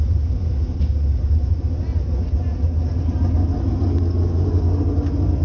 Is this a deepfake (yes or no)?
no